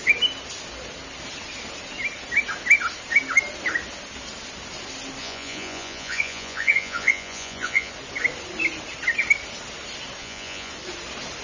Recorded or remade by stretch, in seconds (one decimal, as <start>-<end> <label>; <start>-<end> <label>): 0.0-5.2 recorded; 5.2-7.9 remade; 7.9-10.2 recorded; 10.2-10.7 remade; 10.7-11.4 recorded

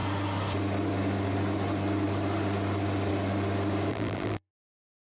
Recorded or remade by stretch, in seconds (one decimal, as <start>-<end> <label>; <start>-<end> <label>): 0.0-3.9 recorded; 3.9-4.5 remade; 4.5-5.1 recorded